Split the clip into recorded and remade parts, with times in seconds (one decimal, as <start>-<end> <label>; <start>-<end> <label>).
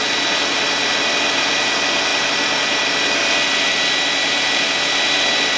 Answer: 0.0-5.6 recorded